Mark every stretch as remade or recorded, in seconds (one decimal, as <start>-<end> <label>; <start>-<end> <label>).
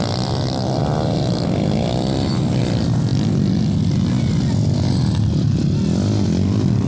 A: 0.0-6.9 recorded